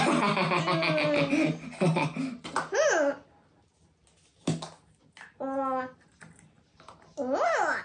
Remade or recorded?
recorded